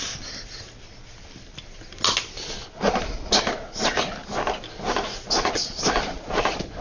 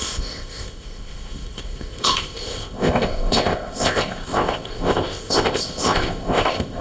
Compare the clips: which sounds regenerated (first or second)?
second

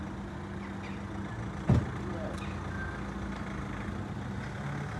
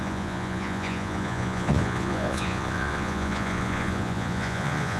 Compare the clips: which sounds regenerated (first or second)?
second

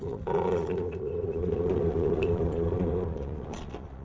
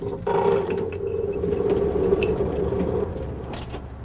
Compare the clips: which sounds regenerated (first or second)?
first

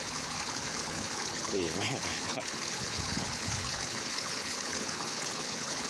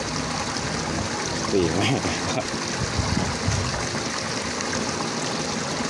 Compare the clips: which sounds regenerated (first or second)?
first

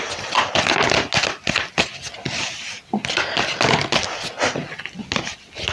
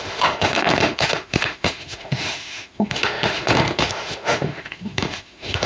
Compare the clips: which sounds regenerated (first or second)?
second